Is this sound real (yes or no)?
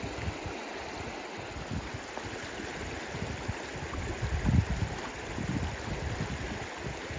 yes